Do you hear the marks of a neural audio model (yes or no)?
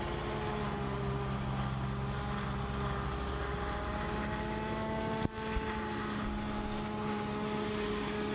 no